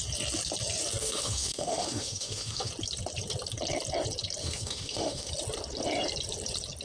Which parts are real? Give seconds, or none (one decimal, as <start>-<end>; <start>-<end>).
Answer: 0.0-1.0; 2.7-4.4; 5.3-6.8